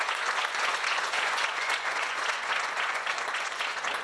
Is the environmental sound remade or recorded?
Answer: remade